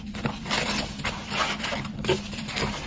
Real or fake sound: real